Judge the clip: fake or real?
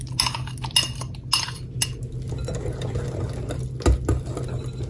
real